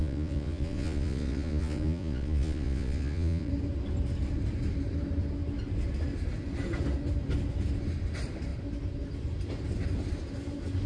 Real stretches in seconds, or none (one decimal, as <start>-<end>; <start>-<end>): 3.5-10.9